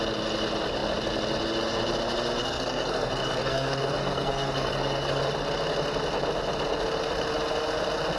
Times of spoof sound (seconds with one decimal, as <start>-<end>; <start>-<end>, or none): 2.4-5.2